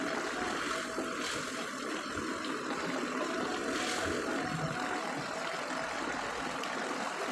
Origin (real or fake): real